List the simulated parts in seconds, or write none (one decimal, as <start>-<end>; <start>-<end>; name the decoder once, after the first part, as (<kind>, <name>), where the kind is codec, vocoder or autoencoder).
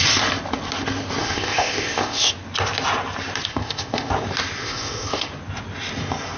1.2-2.3 (codec, ZipCodec); 3.5-4.1; 4.6-5.3